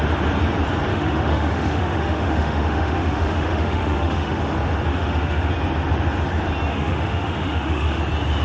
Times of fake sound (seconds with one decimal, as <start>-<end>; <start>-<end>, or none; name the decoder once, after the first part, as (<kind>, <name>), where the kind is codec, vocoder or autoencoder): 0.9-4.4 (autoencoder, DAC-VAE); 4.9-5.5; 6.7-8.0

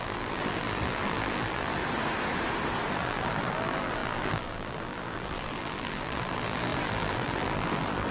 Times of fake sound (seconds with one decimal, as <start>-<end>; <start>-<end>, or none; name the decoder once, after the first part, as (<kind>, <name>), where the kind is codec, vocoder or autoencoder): 0.0-1.8 (vocoder, BigVGAN v2); 2.9-8.1

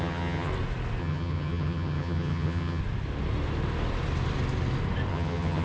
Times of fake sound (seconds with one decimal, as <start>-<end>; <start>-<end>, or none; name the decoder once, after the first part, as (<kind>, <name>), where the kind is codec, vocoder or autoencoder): 0.0-0.5 (vocoder, HiFi-GAN); 1.0-2.8; 5.1-5.6